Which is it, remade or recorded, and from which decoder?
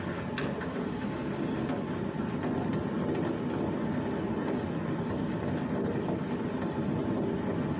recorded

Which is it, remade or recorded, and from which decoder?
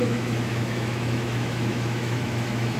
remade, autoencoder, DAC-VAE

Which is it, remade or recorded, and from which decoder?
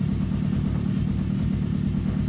recorded